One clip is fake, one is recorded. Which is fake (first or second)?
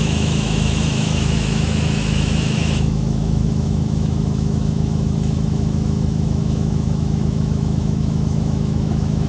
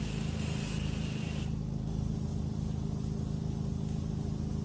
first